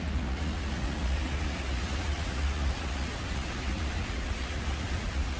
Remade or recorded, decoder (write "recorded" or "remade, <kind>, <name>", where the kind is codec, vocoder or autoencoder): remade, vocoder, Vocos